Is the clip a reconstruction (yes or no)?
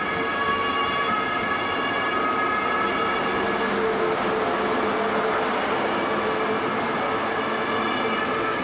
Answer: no